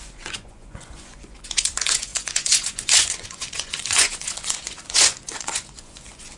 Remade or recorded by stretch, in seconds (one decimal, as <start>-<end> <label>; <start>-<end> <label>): 0.0-6.4 remade